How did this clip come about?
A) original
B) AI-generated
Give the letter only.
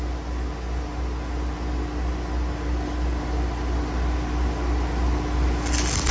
A